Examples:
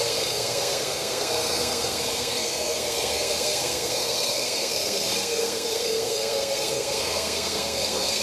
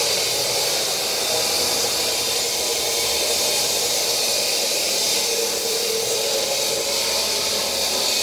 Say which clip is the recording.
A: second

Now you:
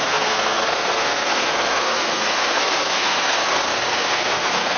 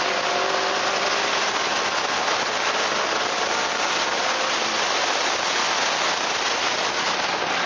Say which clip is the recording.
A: second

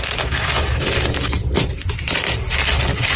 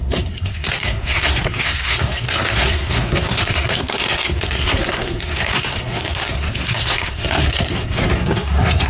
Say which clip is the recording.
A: first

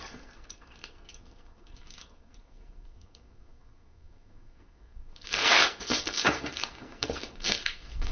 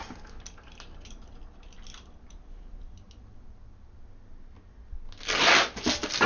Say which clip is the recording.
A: second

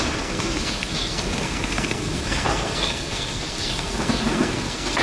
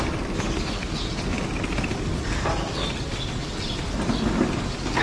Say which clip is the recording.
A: second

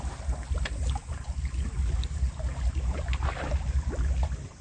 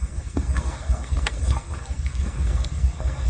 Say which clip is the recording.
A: first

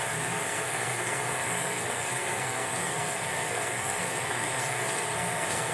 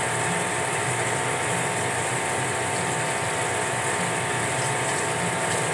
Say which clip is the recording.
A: second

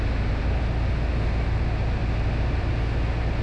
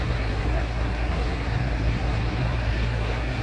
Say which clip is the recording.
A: first